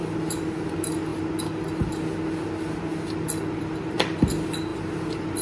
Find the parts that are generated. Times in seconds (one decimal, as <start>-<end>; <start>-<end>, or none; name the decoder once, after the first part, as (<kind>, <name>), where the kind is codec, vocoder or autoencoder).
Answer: none